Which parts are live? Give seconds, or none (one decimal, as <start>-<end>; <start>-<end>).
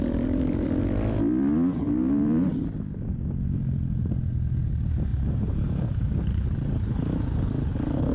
0.0-5.1; 7.0-8.1